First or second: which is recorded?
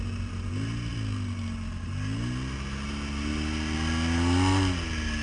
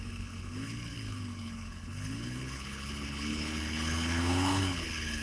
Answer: first